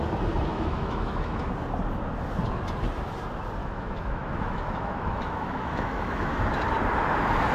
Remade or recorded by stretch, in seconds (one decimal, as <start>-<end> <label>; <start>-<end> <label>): 0.0-0.5 recorded; 0.5-1.5 remade; 1.5-3.6 recorded; 3.6-6.4 remade; 6.4-7.5 recorded